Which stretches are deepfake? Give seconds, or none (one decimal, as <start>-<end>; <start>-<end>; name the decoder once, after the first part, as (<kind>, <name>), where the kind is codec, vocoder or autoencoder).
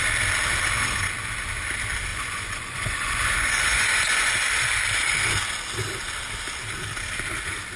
2.1-4.3 (vocoder, Vocos)